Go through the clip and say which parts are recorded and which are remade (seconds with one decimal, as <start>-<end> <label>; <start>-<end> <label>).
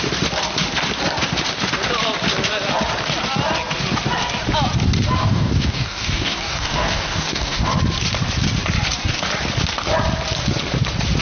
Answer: 0.0-5.2 recorded; 5.2-7.8 remade; 7.8-11.2 recorded